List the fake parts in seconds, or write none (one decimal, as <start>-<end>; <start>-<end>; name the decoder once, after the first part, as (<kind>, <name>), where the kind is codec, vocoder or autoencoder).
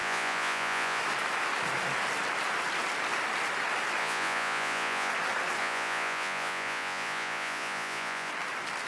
0.0-1.0 (vocoder, Vocos); 4.0-5.1; 5.6-8.3